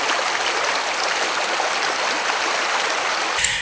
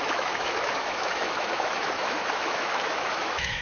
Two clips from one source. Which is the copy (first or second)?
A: second